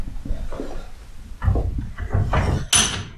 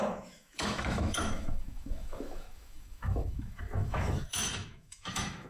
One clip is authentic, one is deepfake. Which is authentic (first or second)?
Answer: first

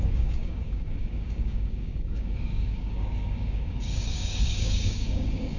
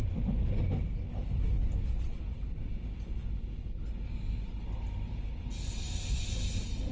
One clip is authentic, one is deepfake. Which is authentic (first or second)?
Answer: second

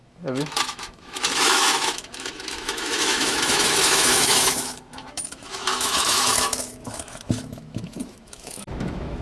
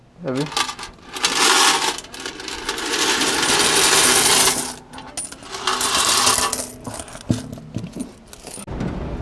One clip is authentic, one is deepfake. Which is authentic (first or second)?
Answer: second